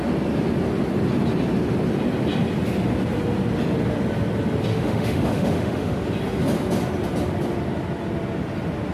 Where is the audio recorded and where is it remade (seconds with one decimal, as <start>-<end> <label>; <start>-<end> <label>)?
0.0-4.7 recorded; 4.7-6.0 remade; 6.0-8.9 recorded